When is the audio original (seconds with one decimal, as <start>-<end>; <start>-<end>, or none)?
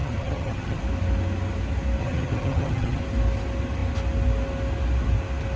0.8-2.0; 3.0-5.6